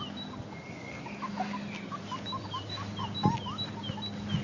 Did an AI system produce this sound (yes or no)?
no